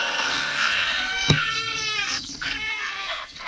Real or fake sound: fake